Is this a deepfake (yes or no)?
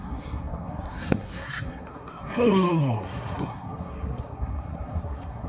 yes